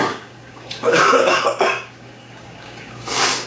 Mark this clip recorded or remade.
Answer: remade